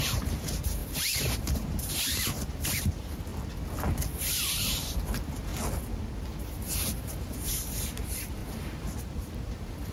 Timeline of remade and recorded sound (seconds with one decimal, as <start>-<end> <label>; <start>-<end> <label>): 0.0-3.3 remade; 3.3-4.3 recorded; 4.3-5.5 remade; 5.5-6.4 recorded; 6.4-9.9 remade

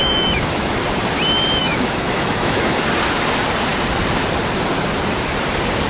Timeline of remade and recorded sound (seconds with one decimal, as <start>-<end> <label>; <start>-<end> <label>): 0.0-0.8 remade; 0.8-1.6 recorded; 1.6-2.8 remade; 2.8-5.9 recorded

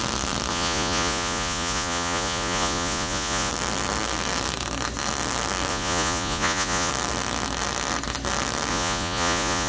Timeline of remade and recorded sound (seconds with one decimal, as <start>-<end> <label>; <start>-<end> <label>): 0.0-0.5 recorded; 0.5-3.5 remade; 3.5-5.7 recorded; 5.7-6.9 remade; 6.9-8.7 recorded; 8.7-9.7 remade

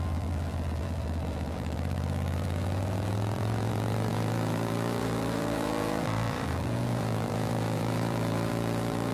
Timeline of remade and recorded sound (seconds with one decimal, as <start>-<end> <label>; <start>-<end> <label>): 0.0-9.1 remade

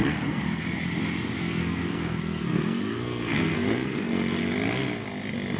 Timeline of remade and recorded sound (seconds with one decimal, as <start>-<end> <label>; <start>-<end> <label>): 0.0-0.6 remade; 0.6-1.4 recorded; 1.4-4.4 remade; 4.4-5.6 recorded

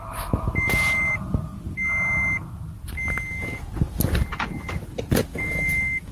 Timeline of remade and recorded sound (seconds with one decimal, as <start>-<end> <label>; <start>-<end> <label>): 0.0-5.3 recorded; 5.3-6.1 remade